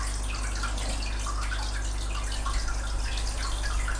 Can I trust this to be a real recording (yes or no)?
yes